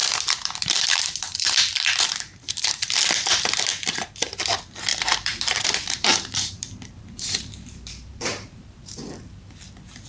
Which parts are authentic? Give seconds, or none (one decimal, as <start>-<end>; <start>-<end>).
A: 3.1-3.7; 4.4-4.9; 9.3-10.1